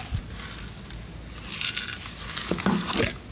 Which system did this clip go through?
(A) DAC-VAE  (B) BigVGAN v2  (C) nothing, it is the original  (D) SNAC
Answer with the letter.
C